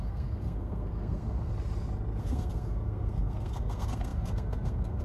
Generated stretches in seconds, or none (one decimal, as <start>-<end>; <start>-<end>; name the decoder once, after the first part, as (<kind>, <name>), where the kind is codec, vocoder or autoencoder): 0.0-1.5 (codec, SNAC); 2.2-5.0